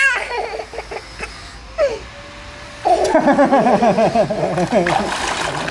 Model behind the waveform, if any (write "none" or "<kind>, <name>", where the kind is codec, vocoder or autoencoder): none